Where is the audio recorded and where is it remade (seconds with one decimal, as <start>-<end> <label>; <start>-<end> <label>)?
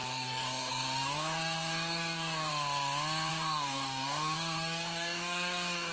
0.0-2.5 remade; 2.5-3.3 recorded; 3.3-5.9 remade